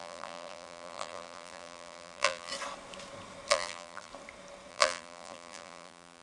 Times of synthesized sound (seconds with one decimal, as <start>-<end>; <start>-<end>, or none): 0.0-2.5; 3.5-4.1; 4.7-6.2